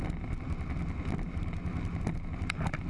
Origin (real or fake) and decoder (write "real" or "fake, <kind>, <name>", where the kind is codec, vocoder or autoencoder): real